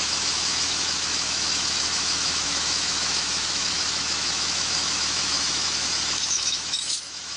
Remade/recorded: remade